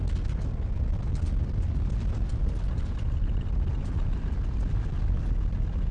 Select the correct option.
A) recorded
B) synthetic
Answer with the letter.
A